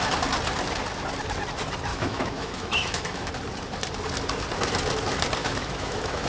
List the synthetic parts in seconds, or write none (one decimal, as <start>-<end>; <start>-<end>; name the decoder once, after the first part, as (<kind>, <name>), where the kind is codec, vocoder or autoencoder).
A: 1.9-3.3 (autoencoder, DAC-VAE); 5.4-6.3